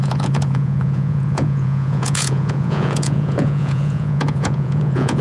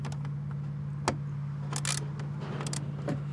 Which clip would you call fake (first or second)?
first